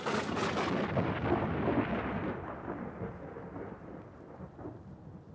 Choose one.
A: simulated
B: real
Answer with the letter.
B